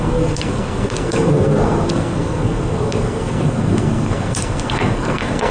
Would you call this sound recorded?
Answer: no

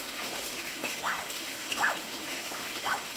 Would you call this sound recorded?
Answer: no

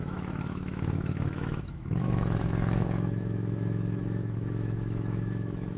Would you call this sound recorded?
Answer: no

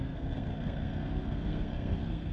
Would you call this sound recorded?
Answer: no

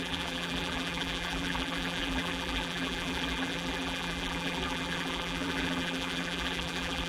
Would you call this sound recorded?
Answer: no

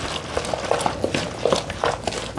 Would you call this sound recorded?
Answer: yes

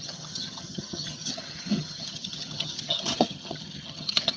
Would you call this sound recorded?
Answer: no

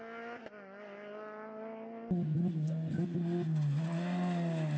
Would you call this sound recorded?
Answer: yes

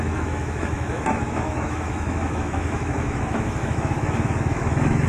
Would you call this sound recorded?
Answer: no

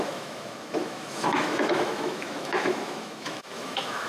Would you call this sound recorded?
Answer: no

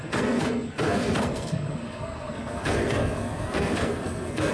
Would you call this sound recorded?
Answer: no